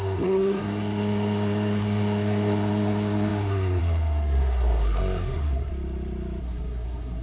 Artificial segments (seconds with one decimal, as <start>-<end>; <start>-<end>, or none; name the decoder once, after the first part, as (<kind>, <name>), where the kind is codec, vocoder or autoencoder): 0.0-5.7 (codec, SNAC); 6.4-7.2